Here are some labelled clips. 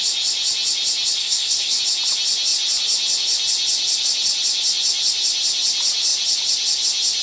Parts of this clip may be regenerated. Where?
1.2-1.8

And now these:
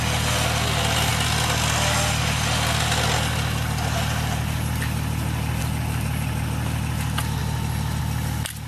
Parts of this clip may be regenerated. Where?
none

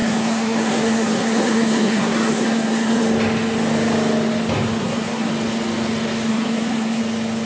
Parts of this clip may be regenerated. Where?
0.0-3.0; 4.8-5.3; 6.3-7.0